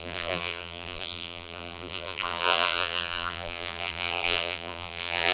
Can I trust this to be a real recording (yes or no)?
no